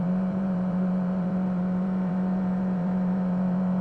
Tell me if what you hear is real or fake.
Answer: fake